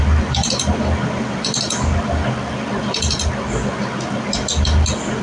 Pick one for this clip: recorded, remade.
recorded